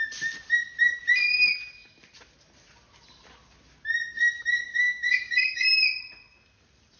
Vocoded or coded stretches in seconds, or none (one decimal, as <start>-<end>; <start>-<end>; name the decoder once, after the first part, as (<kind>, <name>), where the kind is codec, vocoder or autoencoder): 4.4-5.6 (codec, DAC)